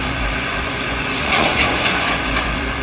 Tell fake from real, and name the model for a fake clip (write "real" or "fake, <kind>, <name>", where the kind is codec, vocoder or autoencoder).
fake, vocoder, Vocos